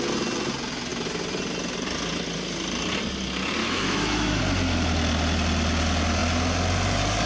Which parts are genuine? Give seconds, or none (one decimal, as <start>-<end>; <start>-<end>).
0.0-3.6; 4.4-7.3